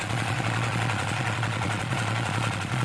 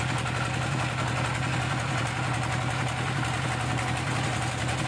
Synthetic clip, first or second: first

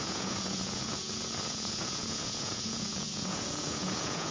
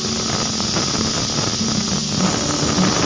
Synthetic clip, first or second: first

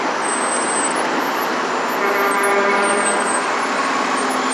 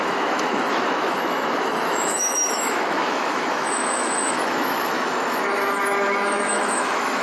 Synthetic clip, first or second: second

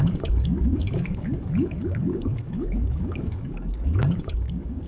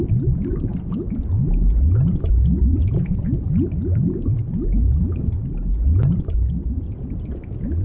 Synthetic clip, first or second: first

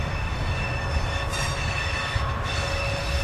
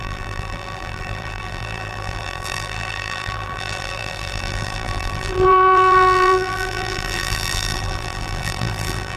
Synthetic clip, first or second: second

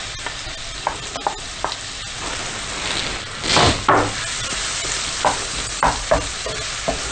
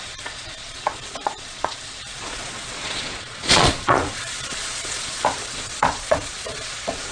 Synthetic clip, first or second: second